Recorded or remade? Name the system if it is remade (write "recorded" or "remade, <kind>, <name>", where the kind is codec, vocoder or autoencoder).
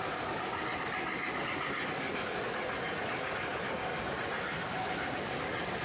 recorded